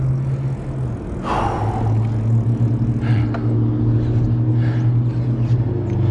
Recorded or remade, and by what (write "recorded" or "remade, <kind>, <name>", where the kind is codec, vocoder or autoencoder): recorded